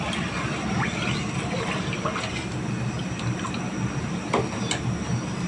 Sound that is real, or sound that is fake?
real